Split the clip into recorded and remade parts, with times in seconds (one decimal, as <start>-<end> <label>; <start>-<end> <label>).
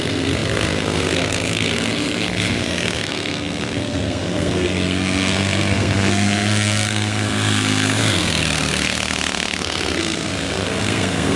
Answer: 0.0-11.4 remade